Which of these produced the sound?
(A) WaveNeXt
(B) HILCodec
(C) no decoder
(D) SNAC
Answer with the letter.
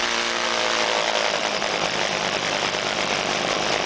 C